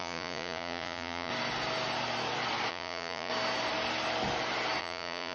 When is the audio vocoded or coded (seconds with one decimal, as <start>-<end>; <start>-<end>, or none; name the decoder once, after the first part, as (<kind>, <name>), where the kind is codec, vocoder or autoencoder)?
0.0-1.3 (vocoder, Vocos); 2.7-3.3; 4.8-5.3